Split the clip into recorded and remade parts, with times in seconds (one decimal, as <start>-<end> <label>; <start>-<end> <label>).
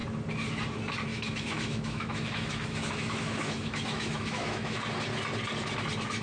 0.0-1.1 recorded; 1.1-4.8 remade; 4.8-6.2 recorded